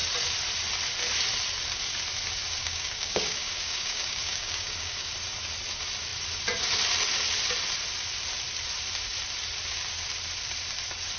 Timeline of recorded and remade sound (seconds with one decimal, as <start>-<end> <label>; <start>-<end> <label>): 0.0-2.6 recorded; 2.6-5.1 remade; 5.1-11.2 recorded